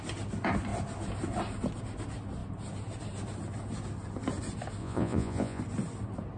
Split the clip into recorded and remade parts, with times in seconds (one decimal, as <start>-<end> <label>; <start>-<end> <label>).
0.0-4.8 recorded; 4.8-5.6 remade; 5.6-6.4 recorded

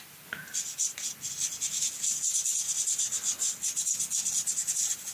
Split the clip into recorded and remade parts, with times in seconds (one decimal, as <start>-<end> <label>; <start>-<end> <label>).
0.0-5.1 recorded

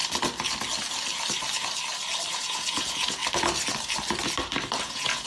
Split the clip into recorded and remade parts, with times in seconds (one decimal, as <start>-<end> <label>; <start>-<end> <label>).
0.0-2.3 recorded; 2.3-3.2 remade; 3.2-4.8 recorded; 4.8-5.3 remade